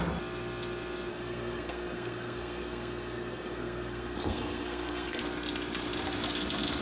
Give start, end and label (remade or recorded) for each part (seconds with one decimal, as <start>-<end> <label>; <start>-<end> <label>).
0.0-1.1 recorded; 1.1-5.2 remade; 5.2-6.8 recorded